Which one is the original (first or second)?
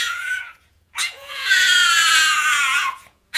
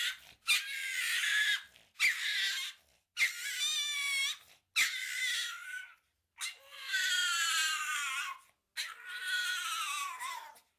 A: second